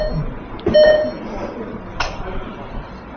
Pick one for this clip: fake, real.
real